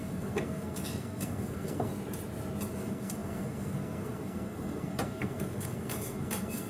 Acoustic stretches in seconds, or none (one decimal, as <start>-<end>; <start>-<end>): 1.9-2.7